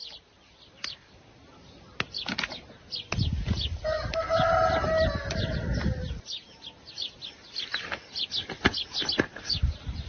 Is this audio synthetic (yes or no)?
no